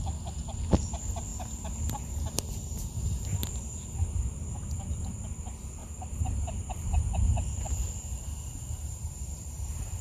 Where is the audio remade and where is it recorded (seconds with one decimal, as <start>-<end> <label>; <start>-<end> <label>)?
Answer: 0.0-1.3 recorded; 1.3-5.1 remade; 5.1-5.8 recorded; 5.8-7.0 remade; 7.0-8.1 recorded; 8.1-10.0 remade